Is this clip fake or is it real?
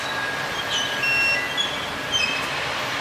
real